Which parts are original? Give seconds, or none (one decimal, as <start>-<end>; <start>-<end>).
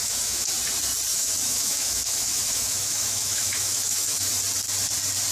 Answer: 0.5-1.1; 4.3-5.3